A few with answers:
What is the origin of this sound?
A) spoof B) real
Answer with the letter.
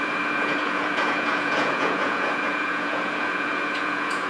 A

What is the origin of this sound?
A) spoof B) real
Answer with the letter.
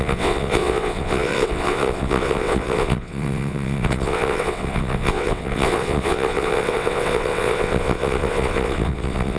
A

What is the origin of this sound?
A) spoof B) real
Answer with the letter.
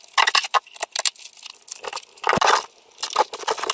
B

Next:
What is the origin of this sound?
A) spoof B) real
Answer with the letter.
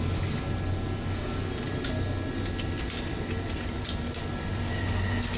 B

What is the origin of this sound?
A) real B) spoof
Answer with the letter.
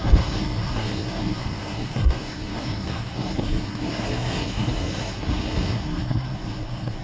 B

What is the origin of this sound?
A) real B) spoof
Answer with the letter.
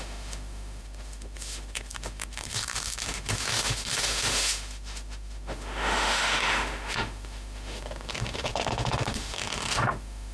B